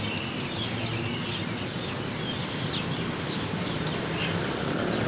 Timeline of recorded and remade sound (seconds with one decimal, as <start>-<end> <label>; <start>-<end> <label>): 0.0-5.1 recorded